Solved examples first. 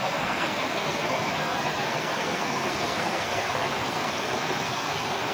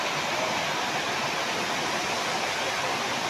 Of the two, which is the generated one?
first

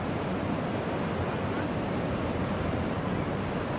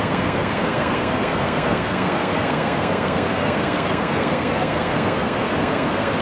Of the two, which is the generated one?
second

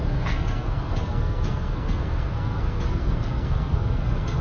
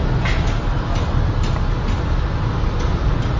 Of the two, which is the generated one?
first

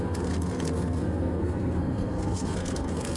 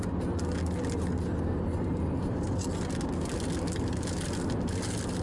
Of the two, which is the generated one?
first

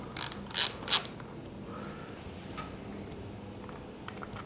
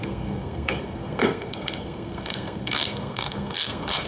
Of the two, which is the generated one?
second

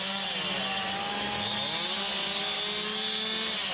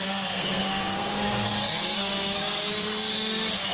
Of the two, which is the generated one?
second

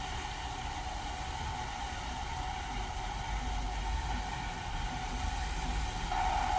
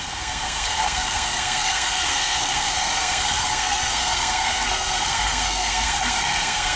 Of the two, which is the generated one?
second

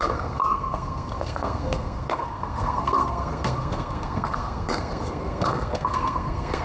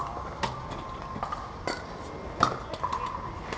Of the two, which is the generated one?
first